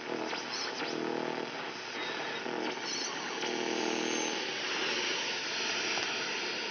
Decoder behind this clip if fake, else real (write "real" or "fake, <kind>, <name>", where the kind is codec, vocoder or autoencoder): real